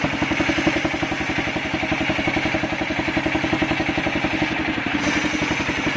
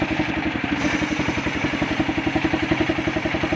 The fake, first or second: second